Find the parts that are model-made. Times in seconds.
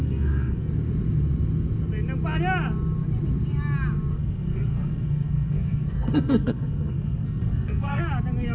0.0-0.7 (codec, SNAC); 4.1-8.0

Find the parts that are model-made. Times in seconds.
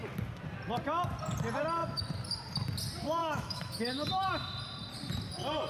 3.2-4.3 (autoencoder, DAC-VAE)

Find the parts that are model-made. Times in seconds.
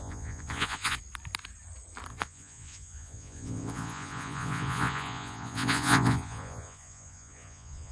0.0-1.0 (vocoder, Vocos); 2.1-7.9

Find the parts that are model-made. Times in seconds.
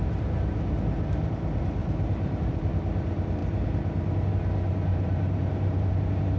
1.8-2.7 (vocoder, BigVGAN v2); 4.9-5.9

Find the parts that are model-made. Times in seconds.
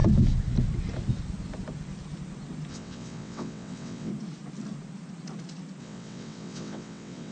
2.7-4.1 (vocoder, WaveNeXt); 5.8-7.3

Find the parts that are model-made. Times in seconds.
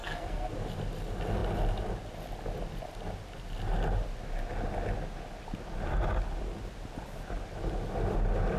0.0-0.5 (codec, SNAC)